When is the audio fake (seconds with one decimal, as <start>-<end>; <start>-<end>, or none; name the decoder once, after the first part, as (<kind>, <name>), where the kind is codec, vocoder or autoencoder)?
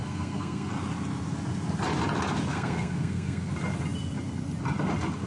0.0-0.7 (codec, SNAC); 2.5-3.5